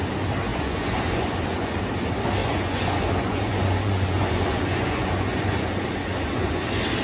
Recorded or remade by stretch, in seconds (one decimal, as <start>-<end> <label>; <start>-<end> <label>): 0.0-0.5 recorded; 0.5-1.8 remade; 1.8-2.4 recorded; 2.4-6.6 remade; 6.6-7.0 recorded